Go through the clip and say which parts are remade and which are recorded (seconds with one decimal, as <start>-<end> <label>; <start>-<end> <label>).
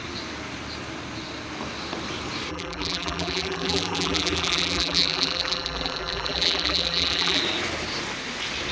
0.0-2.5 recorded; 2.5-7.4 remade; 7.4-8.7 recorded